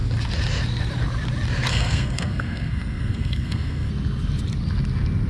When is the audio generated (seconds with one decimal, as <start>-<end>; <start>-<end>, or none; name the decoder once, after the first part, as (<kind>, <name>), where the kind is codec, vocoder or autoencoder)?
1.7-3.9 (codec, SNAC)